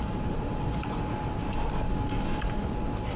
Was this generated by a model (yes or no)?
no